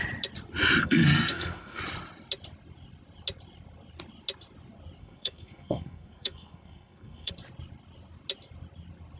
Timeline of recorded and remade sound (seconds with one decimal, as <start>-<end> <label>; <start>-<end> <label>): 0.0-0.8 recorded; 0.8-1.8 remade; 1.8-5.0 recorded; 5.0-7.3 remade; 7.3-9.2 recorded